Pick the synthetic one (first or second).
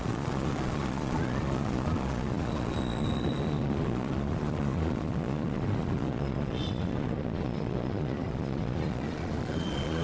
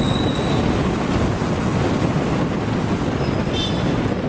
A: first